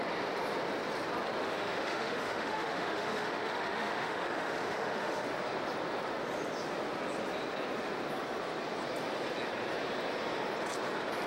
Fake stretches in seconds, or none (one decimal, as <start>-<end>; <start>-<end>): 1.4-5.2